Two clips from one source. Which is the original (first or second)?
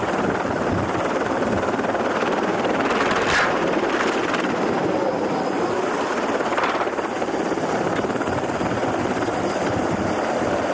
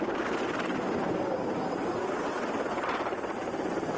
second